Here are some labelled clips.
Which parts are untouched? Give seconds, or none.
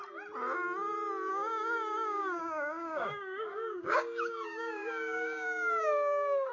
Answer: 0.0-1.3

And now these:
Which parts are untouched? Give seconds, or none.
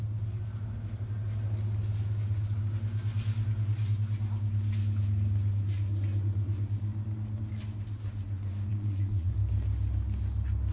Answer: 0.0-8.7; 9.3-10.7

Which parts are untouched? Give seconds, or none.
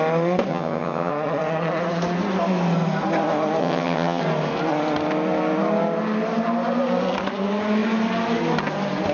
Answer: 0.0-0.5; 1.1-3.6; 4.2-9.1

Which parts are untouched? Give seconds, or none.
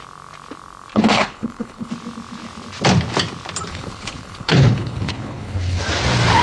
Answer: 0.0-0.9; 1.9-3.7; 5.8-6.4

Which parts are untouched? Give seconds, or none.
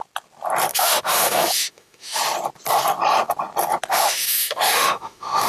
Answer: 0.0-0.7; 2.2-3.9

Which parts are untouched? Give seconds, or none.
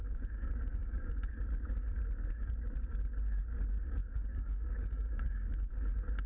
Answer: 1.3-4.0; 5.7-6.3